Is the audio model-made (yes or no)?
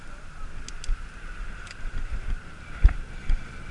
no